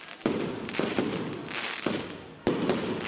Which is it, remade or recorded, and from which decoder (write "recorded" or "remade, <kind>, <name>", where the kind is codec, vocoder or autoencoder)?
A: recorded